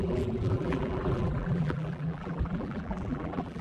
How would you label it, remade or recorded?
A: remade